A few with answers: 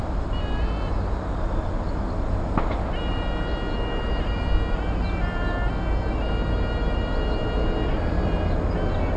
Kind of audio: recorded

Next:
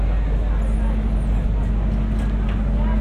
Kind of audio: recorded